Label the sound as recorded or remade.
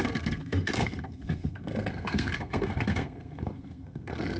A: remade